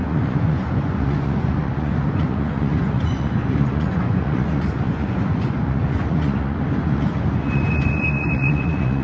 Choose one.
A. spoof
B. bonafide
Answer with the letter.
A